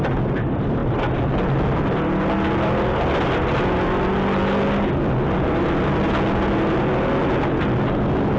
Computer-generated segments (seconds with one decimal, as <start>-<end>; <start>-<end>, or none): none

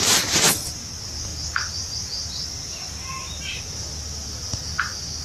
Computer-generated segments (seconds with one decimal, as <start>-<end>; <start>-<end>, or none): none

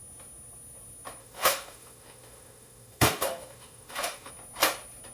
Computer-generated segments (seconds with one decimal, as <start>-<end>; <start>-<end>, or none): 1.2-4.3

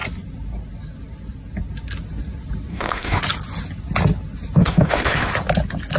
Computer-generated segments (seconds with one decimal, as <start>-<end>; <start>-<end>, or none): 2.7-3.2; 4.6-5.3

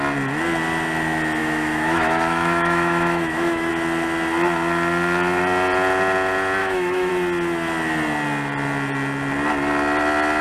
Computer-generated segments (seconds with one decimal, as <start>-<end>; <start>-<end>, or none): 1.4-3.7; 6.6-7.1

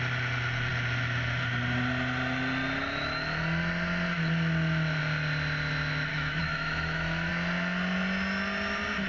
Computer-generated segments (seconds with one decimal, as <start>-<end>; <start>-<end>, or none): 6.1-7.3

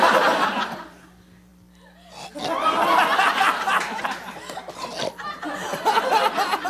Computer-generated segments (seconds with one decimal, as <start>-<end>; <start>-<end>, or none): none

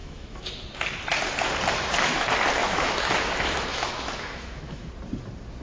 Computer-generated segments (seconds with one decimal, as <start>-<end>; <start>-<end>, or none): 0.0-0.5; 2.6-4.9